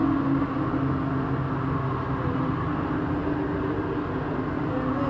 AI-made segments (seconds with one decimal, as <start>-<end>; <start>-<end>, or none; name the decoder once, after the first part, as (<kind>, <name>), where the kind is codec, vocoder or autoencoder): none